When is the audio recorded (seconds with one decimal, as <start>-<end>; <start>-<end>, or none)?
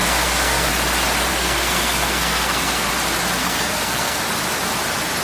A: 0.7-1.3; 2.9-3.4; 4.2-5.2